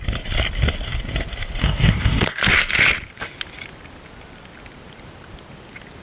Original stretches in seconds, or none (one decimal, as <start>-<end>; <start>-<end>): 0.0-1.6; 2.4-6.0